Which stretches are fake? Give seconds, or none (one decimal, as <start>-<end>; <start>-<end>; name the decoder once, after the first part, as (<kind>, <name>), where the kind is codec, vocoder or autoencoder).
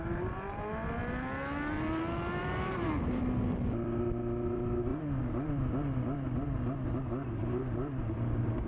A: 2.4-3.2 (vocoder, BigVGAN v2)